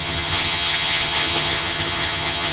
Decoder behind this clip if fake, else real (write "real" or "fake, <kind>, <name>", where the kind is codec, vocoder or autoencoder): fake, vocoder, HiFi-GAN